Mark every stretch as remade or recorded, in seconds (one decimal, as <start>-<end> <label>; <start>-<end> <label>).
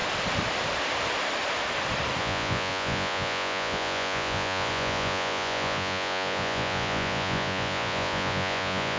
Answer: 0.0-2.2 recorded; 2.2-9.0 remade